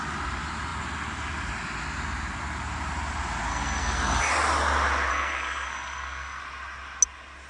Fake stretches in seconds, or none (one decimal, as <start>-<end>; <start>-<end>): 3.5-4.3; 5.1-6.4